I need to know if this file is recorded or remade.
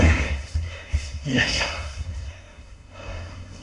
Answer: remade